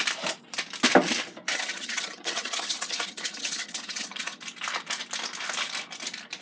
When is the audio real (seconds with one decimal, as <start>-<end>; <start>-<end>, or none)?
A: 0.0-1.5; 4.4-6.4